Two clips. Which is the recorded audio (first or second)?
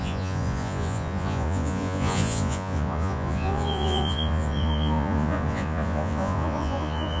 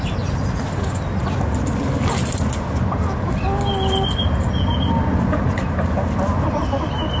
second